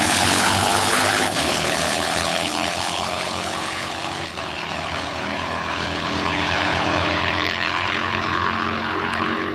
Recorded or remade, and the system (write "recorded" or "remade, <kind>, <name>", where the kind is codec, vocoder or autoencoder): remade, codec, HILCodec